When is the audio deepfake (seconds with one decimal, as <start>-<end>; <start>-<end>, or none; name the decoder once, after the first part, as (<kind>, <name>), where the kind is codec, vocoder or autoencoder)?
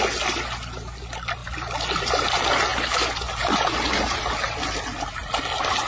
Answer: none